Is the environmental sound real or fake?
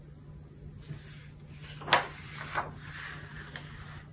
real